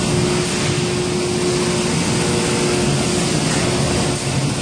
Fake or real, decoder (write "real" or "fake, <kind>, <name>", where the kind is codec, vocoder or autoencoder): real